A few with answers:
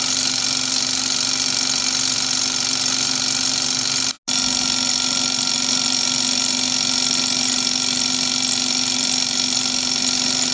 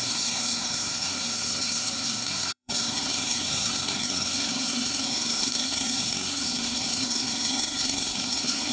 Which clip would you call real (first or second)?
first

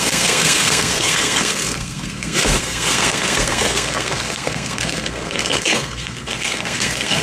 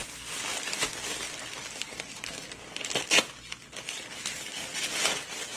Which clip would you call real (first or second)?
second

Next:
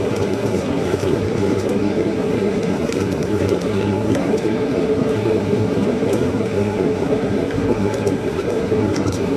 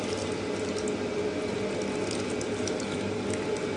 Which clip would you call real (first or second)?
second